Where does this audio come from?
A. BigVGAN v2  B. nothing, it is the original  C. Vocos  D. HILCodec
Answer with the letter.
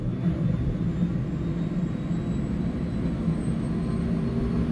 B